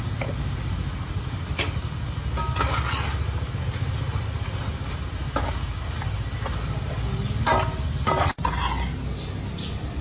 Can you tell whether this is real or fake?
real